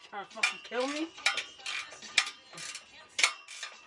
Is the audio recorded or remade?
recorded